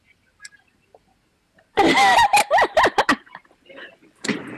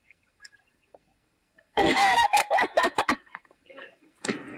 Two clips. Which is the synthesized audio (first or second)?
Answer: second